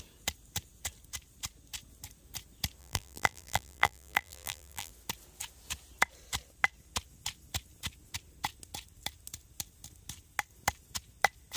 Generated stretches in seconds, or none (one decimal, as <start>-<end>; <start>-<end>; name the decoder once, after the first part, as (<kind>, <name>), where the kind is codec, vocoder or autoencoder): 2.8-4.9 (vocoder, BigVGAN v2)